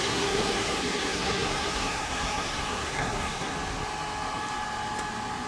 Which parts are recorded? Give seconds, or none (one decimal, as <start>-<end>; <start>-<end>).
3.5-5.5